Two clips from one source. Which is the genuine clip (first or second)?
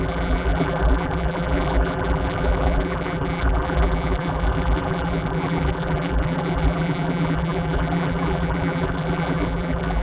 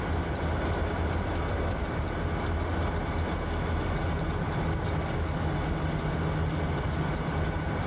second